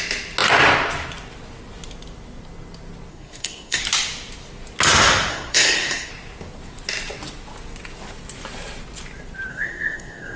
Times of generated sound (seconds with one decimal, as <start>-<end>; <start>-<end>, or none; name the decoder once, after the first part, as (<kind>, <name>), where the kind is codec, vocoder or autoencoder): 3.1-3.8 (codec, SNAC); 5.3-6.1; 9.5-10.4